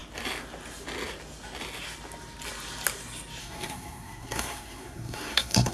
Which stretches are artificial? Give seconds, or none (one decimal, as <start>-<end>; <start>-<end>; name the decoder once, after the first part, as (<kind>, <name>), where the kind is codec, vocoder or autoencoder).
3.4-5.7 (codec, SNAC)